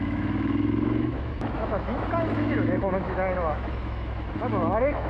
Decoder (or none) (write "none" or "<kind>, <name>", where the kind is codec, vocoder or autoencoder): autoencoder, DAC-VAE